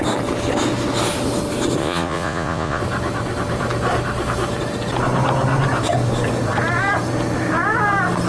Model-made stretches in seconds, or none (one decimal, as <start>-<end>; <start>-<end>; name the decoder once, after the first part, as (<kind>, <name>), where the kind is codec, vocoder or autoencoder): 1.8-2.8 (vocoder, Vocos)